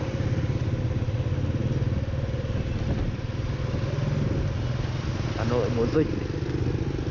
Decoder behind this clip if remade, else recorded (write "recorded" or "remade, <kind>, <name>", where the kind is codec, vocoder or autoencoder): recorded